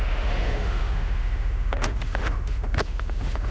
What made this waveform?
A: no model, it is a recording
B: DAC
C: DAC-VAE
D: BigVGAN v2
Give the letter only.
C